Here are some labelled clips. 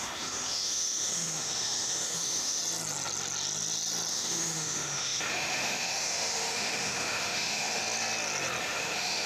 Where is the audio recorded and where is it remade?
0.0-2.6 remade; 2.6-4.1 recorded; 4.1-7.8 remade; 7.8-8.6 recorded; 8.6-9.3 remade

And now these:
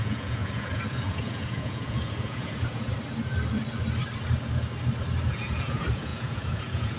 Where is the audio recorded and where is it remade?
0.0-2.9 remade; 2.9-5.3 recorded; 5.3-7.0 remade

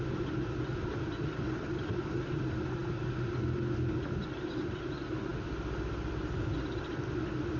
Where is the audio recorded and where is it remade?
0.0-7.6 recorded

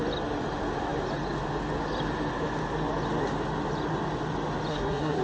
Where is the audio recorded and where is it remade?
0.0-4.7 recorded; 4.7-5.2 remade

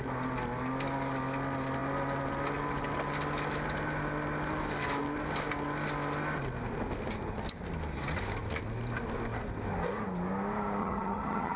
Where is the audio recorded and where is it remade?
0.0-10.8 recorded; 10.8-11.6 remade